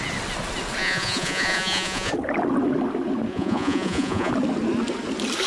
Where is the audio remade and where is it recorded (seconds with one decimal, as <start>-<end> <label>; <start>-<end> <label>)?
0.0-0.8 recorded; 0.8-2.1 remade; 2.1-3.3 recorded; 3.3-4.3 remade; 4.3-5.5 recorded